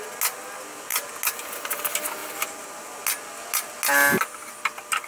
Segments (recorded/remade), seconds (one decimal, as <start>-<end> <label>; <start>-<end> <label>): 0.0-5.1 recorded